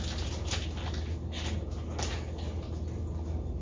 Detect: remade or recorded recorded